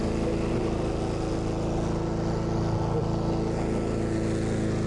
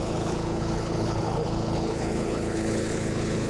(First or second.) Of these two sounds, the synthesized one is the second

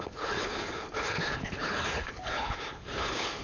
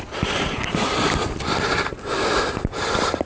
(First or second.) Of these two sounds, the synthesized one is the first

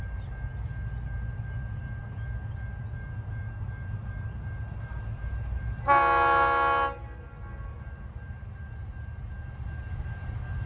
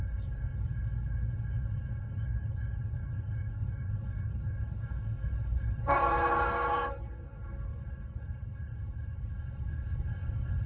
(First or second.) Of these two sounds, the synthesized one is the second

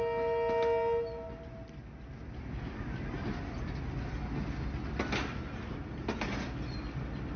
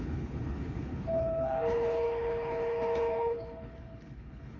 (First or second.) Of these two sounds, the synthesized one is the second